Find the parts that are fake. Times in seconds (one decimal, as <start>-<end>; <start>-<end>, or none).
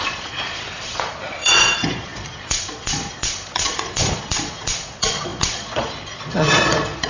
0.0-7.1